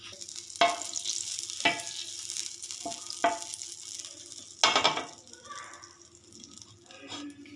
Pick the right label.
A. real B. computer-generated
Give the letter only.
A